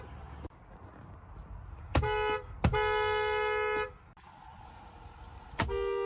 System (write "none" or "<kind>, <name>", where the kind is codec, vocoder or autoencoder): none